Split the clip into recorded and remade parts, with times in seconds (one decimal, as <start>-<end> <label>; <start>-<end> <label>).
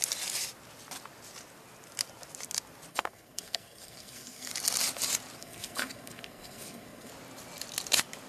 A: 0.0-2.9 recorded; 2.9-4.5 remade; 4.5-5.4 recorded; 5.4-7.1 remade; 7.1-8.3 recorded